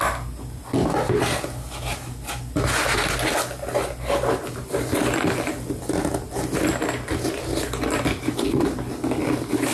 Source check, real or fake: real